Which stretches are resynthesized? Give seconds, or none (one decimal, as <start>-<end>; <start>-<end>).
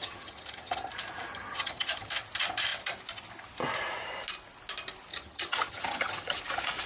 0.0-0.9; 1.3-2.1; 5.1-6.4